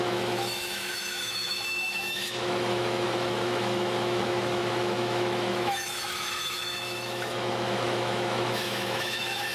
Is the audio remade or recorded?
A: remade